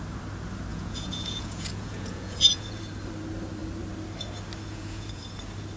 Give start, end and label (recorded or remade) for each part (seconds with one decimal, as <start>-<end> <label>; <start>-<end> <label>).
0.0-0.7 recorded; 0.7-2.8 remade; 2.8-4.7 recorded; 4.7-5.2 remade; 5.2-5.8 recorded